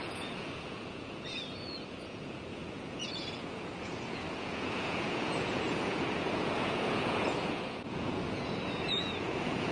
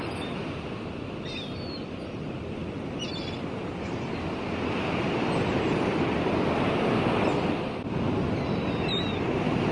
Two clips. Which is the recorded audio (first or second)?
second